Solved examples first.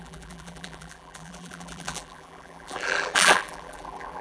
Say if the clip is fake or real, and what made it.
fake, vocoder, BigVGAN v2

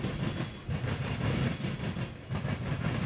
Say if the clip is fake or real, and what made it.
real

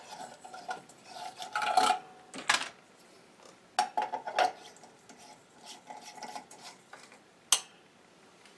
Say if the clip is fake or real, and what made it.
real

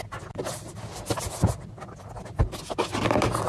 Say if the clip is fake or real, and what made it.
real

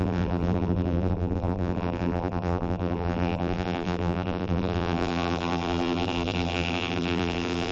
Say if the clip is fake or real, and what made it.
fake, vocoder, BigVGAN v2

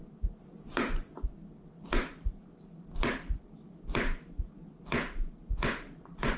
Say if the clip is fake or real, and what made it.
real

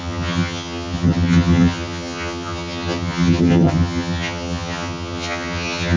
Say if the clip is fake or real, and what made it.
fake, vocoder, HiFi-GAN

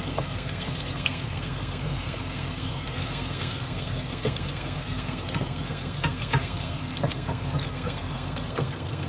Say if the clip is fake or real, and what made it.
fake, codec, SNAC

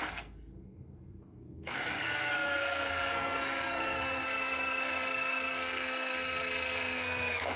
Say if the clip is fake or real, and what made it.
fake, codec, SNAC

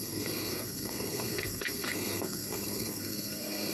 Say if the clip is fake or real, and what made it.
fake, codec, SNAC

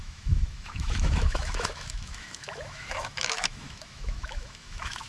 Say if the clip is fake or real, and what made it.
fake, autoencoder, DAC-VAE